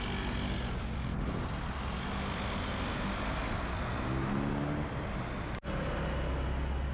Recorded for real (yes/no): yes